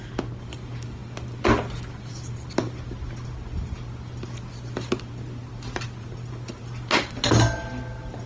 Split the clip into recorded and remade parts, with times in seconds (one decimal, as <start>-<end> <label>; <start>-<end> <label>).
0.0-8.3 recorded